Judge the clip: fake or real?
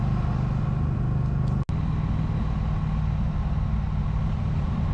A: real